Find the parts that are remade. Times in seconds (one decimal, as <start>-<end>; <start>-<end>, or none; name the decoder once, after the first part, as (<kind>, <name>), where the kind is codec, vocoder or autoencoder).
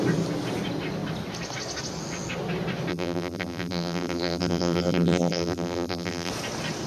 2.9-6.3 (vocoder, BigVGAN v2)